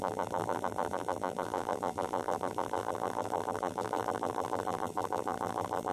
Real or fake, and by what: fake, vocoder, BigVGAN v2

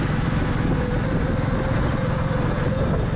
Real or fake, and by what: real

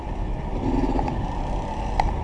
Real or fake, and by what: real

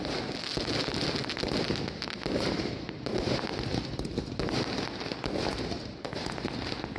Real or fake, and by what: real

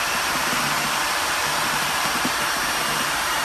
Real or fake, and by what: fake, vocoder, BigVGAN v2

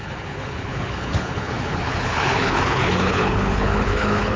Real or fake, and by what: fake, codec, HILCodec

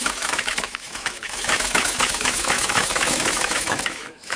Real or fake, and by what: fake, autoencoder, DAC-VAE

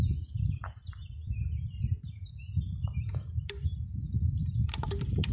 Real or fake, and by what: fake, vocoder, BigVGAN v2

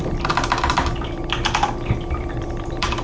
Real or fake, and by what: fake, vocoder, BigVGAN v2